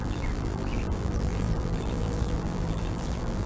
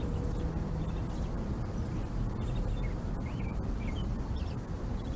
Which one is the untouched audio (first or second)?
second